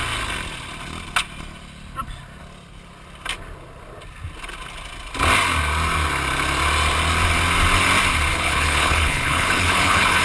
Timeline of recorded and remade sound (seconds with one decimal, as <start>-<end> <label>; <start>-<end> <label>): 0.0-8.3 recorded; 8.3-10.2 remade